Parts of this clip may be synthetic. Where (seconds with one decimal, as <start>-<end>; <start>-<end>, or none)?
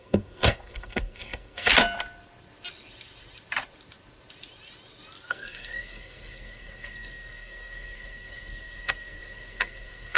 0.0-1.7; 5.3-10.2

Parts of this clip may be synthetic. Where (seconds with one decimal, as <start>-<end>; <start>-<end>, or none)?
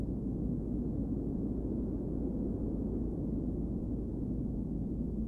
none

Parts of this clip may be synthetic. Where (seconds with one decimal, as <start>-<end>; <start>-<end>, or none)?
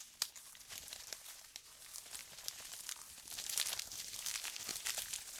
none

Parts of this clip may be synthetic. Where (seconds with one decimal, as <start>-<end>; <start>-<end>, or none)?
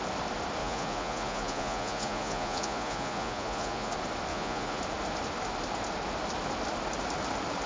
0.6-3.9; 4.3-4.8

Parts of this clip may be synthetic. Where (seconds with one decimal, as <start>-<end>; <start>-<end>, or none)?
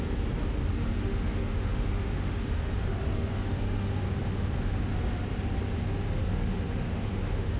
0.7-3.9; 6.2-7.6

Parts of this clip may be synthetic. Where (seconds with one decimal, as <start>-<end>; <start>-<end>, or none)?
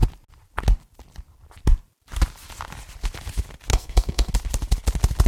3.7-4.3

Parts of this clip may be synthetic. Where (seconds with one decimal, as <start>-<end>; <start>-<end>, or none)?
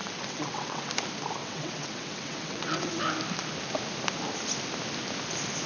0.0-0.9; 1.4-3.0